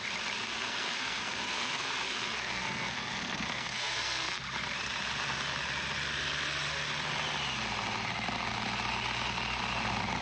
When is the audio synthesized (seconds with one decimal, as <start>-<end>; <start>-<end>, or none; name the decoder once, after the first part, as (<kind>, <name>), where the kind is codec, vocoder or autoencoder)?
0.4-4.4 (codec, SNAC)